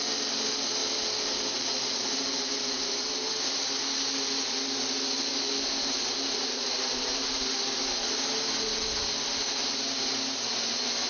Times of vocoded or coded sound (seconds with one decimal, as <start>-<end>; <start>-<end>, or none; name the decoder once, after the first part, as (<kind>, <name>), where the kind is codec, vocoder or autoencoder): 0.8-2.9 (vocoder, BigVGAN v2)